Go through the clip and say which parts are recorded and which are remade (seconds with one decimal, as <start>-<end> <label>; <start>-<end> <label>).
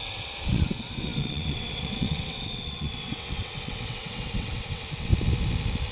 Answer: 0.0-5.1 remade; 5.1-5.9 recorded